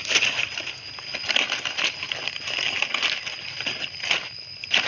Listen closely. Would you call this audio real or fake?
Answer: real